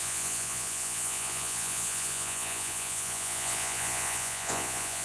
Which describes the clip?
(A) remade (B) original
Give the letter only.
A